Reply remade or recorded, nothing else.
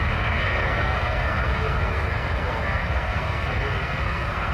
remade